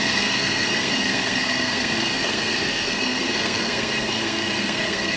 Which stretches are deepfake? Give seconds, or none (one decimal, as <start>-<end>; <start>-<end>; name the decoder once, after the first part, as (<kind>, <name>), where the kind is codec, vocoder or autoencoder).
0.0-5.2 (codec, SNAC)